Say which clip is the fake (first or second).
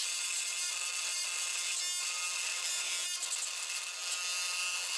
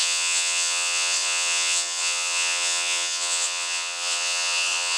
second